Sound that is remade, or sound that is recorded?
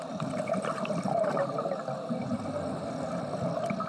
recorded